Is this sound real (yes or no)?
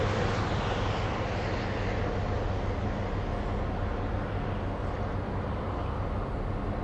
yes